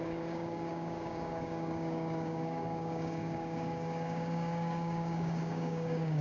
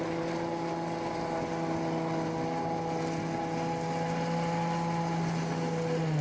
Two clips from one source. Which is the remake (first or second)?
first